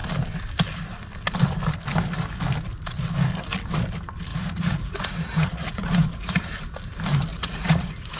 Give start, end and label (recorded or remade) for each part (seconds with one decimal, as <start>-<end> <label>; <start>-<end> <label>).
0.0-4.3 recorded; 4.3-6.4 remade; 6.4-7.3 recorded; 7.3-8.2 remade